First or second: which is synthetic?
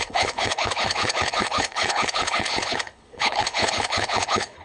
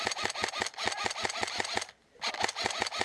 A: first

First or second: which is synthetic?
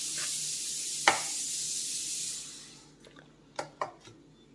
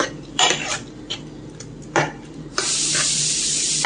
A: second